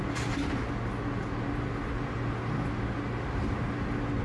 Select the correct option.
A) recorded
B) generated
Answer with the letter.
A